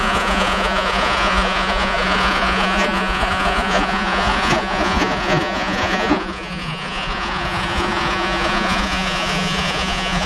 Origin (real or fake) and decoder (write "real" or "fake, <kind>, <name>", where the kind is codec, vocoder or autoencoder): fake, vocoder, Vocos